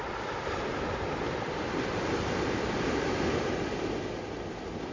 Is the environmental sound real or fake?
real